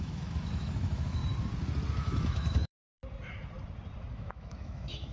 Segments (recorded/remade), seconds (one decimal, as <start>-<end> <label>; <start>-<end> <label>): 0.0-1.2 remade; 1.2-1.9 recorded; 1.9-3.0 remade; 3.0-4.1 recorded; 4.1-5.1 remade